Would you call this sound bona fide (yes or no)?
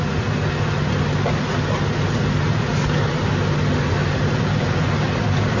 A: yes